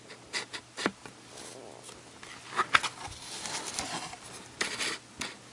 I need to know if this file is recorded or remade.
recorded